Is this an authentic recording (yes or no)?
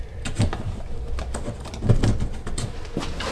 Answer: yes